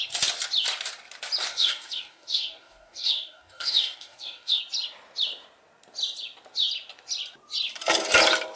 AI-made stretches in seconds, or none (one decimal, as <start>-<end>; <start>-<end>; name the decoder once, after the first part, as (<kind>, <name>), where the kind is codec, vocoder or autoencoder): 1.5-4.6 (codec, DAC)